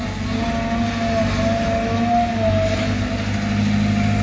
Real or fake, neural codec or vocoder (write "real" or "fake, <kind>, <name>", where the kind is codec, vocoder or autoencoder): real